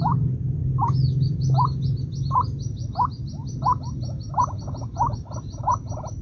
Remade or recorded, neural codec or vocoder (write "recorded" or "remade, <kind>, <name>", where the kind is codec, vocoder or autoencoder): recorded